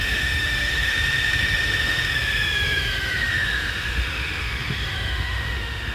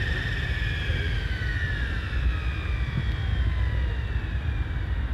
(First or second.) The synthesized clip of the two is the first